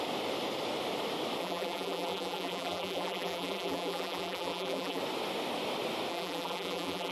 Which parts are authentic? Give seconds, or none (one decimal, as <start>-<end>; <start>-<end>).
0.0-1.4; 5.0-6.1